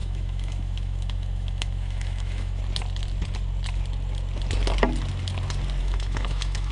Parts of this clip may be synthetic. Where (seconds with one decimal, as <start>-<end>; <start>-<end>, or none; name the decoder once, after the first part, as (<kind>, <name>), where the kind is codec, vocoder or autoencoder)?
0.0-2.6 (autoencoder, DAC-VAE); 5.8-6.7